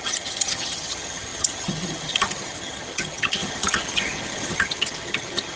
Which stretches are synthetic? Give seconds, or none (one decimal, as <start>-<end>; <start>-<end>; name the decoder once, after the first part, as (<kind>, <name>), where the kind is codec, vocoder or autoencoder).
0.0-5.6 (vocoder, HiFi-GAN)